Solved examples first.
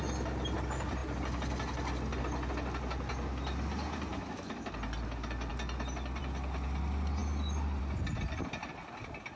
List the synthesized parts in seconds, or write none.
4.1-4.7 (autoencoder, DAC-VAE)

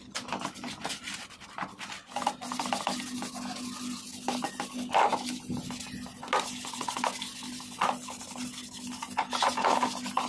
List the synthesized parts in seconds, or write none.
none

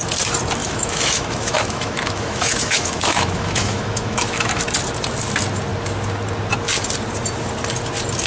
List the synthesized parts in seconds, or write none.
0.6-4.6 (autoencoder, DAC-VAE)

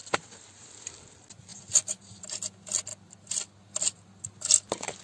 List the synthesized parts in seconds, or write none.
none

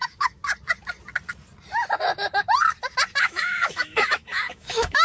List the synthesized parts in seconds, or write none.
0.0-0.4 (autoencoder, DAC-VAE); 3.2-5.0

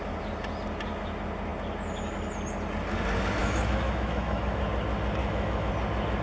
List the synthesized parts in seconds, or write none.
3.4-4.6 (autoencoder, DAC-VAE); 5.2-5.7

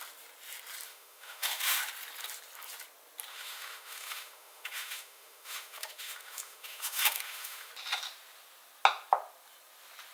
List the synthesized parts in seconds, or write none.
0.9-1.8 (autoencoder, DAC-VAE); 3.3-7.7

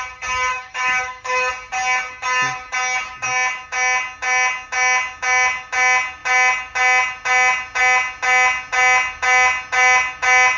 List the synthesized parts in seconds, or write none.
0.5-1.5 (autoencoder, DAC-VAE)